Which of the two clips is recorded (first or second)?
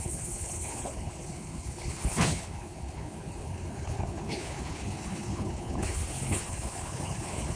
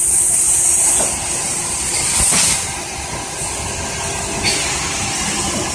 second